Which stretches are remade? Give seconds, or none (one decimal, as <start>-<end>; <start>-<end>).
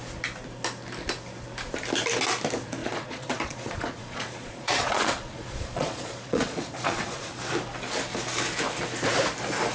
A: 2.8-7.4